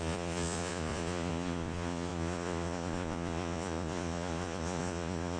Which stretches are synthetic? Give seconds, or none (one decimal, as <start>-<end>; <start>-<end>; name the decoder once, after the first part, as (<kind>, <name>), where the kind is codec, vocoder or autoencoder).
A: 0.0-5.4 (vocoder, Vocos)